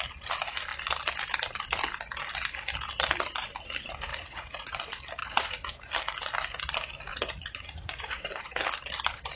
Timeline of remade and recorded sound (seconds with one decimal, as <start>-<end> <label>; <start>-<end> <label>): 0.0-4.1 recorded; 4.1-4.8 remade; 4.8-5.2 recorded; 5.2-5.7 remade; 5.7-7.1 recorded; 7.1-8.5 remade; 8.5-9.4 recorded